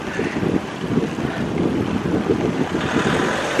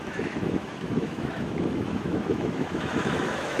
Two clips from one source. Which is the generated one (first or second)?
second